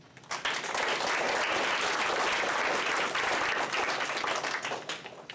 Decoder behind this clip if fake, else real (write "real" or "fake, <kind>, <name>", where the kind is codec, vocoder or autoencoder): real